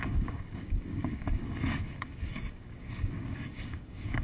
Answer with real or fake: fake